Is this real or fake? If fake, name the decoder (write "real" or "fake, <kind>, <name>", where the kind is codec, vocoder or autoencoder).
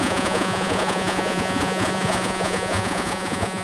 fake, vocoder, Vocos